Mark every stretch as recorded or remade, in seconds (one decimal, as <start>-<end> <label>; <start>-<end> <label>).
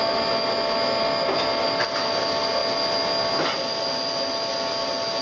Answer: 0.0-5.2 recorded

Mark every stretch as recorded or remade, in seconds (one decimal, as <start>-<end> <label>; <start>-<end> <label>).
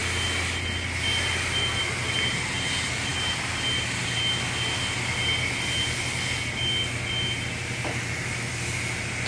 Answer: 0.0-9.3 recorded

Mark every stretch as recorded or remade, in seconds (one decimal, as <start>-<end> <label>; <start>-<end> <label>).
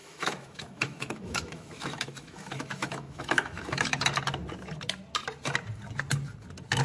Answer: 0.0-4.0 remade; 4.0-6.8 recorded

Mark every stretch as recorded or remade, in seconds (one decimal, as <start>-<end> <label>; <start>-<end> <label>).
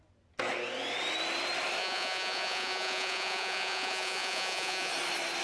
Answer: 0.0-1.8 recorded; 1.8-4.9 remade; 4.9-5.4 recorded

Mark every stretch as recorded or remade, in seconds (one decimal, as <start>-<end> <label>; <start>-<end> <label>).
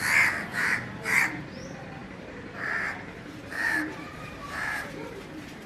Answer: 0.0-0.5 recorded; 0.5-1.4 remade; 1.4-2.0 recorded; 2.0-5.7 remade